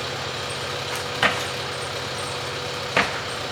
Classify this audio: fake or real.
real